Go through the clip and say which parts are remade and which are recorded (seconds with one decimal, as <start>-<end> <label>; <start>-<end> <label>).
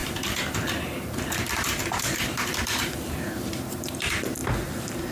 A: 0.0-4.4 remade; 4.4-5.1 recorded